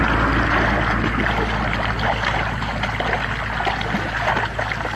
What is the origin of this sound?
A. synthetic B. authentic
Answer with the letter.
B